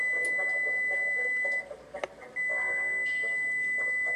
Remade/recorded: recorded